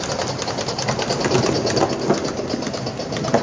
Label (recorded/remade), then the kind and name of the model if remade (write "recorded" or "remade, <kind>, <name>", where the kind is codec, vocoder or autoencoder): recorded